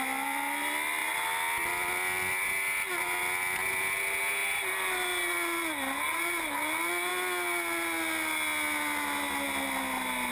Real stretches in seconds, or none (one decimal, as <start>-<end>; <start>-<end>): 0.0-10.3